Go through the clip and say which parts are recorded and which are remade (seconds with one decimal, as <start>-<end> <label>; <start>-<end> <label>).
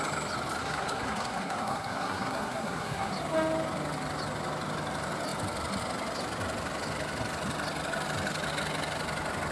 0.0-0.6 recorded; 0.6-3.1 remade; 3.1-9.5 recorded